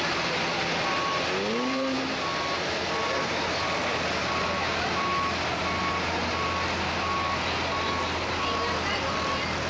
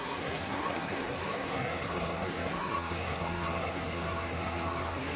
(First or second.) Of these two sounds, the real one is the first